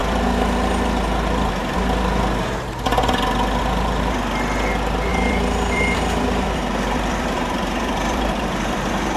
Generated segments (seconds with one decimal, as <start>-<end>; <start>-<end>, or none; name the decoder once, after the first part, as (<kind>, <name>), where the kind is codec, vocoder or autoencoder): 5.1-9.2 (vocoder, BigVGAN v2)